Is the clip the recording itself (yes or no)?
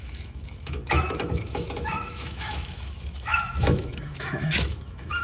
no